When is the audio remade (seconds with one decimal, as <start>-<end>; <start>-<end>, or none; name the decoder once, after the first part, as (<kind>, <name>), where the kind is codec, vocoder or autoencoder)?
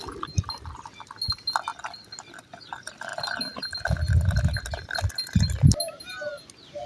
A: none